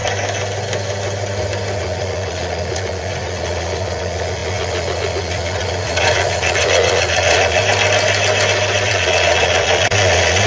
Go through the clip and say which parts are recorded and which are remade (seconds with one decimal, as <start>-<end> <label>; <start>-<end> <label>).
0.0-1.8 recorded; 1.8-7.6 remade; 7.6-8.9 recorded; 8.9-10.5 remade